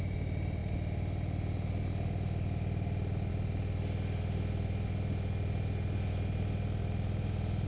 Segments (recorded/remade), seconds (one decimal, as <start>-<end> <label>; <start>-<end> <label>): 0.0-7.7 recorded